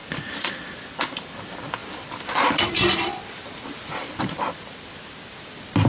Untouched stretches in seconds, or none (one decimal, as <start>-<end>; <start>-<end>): 0.0-1.8; 4.4-5.9